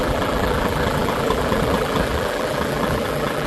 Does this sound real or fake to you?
fake